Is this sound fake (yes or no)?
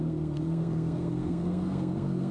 yes